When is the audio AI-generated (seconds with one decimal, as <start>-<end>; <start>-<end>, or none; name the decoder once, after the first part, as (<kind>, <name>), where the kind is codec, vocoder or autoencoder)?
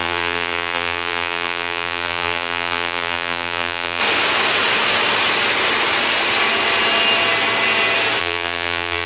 0.0-4.0 (vocoder, BigVGAN v2); 8.2-9.1